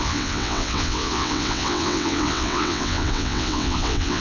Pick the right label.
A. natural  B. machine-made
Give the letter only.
B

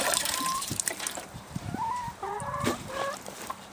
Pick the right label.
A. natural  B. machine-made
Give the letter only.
B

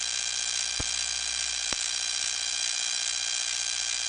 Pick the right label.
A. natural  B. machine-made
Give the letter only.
B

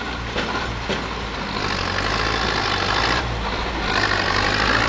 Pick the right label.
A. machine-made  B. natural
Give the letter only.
B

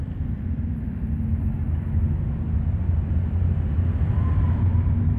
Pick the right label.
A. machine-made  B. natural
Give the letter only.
B